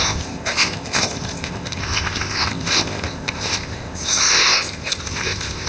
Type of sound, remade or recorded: remade